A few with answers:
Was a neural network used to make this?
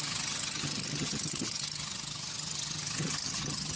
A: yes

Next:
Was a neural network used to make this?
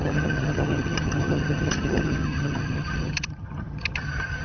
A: yes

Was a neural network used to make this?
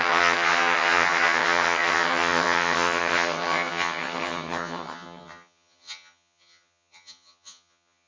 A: yes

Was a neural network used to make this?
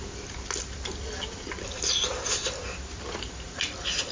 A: no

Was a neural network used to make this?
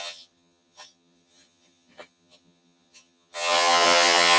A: yes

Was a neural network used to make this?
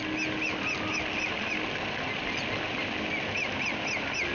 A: no